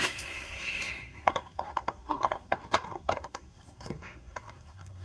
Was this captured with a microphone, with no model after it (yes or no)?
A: no